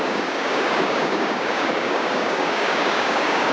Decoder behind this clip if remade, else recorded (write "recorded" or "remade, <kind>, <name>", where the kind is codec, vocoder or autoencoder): remade, codec, DAC